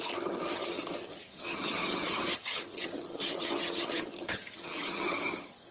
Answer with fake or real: fake